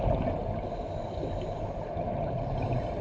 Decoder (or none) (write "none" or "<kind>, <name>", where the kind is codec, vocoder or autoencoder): none